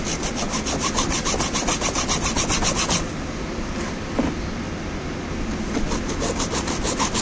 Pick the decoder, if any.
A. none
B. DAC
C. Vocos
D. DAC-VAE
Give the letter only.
A